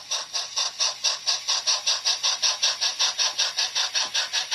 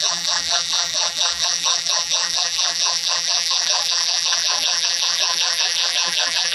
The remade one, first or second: second